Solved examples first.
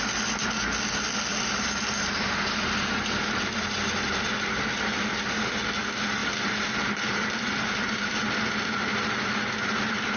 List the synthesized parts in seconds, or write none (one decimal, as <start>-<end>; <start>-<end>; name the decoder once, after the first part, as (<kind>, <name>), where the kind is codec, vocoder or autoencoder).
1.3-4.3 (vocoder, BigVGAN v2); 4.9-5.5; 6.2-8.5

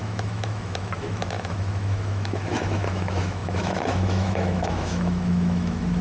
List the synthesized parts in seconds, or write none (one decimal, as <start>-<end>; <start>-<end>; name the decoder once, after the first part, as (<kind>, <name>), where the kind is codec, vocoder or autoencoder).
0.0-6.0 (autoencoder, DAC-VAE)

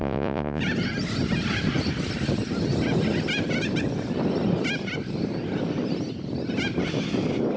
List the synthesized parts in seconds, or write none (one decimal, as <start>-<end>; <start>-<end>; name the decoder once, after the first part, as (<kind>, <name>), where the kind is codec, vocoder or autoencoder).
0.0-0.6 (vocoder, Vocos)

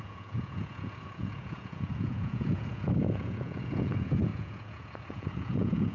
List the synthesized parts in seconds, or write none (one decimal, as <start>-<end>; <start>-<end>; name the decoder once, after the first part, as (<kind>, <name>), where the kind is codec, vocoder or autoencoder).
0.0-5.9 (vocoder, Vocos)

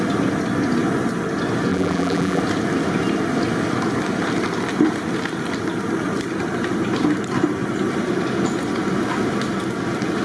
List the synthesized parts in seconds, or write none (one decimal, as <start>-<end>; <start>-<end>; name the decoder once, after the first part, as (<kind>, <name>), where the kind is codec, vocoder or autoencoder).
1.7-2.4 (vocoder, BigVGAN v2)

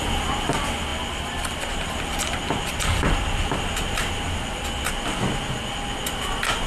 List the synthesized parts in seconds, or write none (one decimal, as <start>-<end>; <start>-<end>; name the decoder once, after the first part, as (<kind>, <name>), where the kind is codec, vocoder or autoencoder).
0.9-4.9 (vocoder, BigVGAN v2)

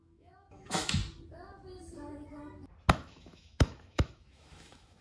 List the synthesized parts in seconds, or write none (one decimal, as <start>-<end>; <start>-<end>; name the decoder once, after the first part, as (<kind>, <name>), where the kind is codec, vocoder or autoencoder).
0.0-1.0 (autoencoder, DAC-VAE); 2.9-5.0

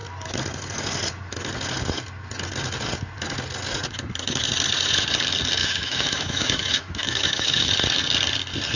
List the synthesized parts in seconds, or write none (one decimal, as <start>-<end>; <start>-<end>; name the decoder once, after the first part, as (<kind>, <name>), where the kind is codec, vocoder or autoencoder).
5.6-7.7 (autoencoder, DAC-VAE)